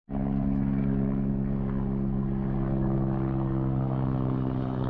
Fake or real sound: fake